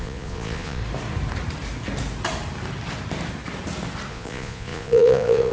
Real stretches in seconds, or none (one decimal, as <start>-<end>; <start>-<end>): 0.8-4.1